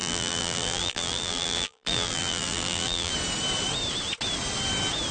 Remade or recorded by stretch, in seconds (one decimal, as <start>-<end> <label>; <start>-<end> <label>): 0.0-3.1 remade; 3.1-5.1 recorded